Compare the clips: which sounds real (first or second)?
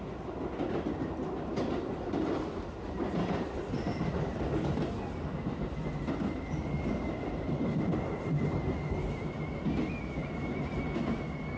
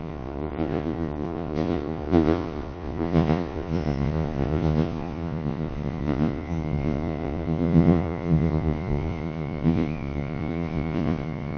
first